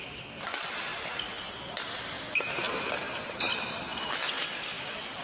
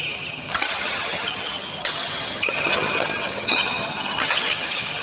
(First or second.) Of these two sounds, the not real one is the second